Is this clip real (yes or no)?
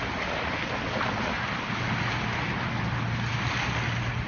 yes